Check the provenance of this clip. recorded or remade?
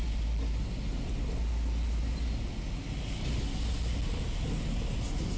recorded